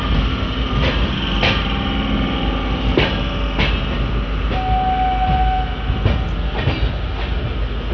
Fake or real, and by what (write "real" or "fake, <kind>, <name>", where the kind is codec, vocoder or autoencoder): real